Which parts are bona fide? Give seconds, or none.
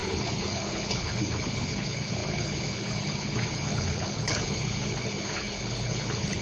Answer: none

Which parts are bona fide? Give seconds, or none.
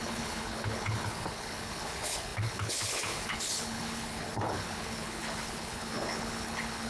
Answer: none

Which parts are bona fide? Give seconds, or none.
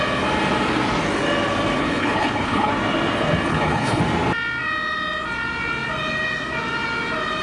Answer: 0.0-1.8; 2.7-3.5; 4.0-7.4